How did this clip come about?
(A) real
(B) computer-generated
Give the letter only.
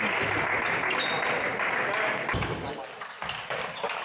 A